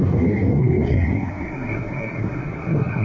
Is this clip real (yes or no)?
no